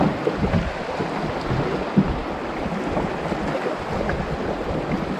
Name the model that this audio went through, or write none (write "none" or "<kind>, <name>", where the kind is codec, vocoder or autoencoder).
none